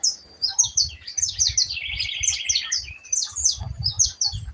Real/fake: real